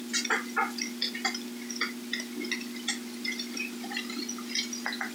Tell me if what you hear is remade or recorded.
recorded